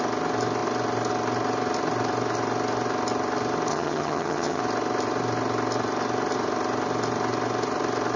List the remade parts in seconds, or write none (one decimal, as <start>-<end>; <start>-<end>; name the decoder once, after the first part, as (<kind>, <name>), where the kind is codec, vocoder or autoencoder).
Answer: 3.7-4.6 (vocoder, HiFi-GAN)

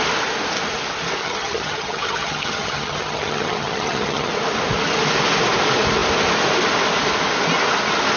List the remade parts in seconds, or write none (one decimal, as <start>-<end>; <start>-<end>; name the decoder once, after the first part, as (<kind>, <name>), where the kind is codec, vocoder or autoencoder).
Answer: 1.2-4.3 (vocoder, HiFi-GAN)

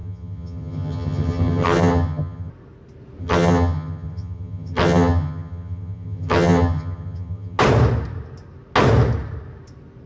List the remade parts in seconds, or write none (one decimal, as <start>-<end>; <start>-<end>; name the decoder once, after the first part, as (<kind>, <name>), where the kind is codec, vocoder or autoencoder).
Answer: 0.0-2.5 (vocoder, HiFi-GAN); 3.2-7.6

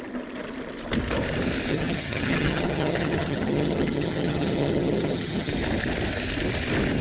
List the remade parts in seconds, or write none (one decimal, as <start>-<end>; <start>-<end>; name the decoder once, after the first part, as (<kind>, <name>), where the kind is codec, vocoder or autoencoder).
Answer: 1.7-5.5 (vocoder, HiFi-GAN)

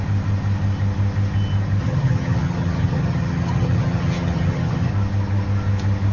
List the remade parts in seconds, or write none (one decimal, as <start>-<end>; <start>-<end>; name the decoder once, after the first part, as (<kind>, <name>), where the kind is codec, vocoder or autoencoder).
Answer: 1.8-4.9 (vocoder, HiFi-GAN)

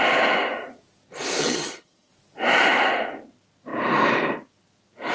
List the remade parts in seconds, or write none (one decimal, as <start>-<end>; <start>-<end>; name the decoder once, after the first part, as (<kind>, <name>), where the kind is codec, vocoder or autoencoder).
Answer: 1.4-2.1 (vocoder, HiFi-GAN)